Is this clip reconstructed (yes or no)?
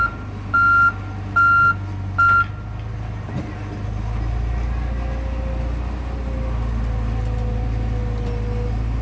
no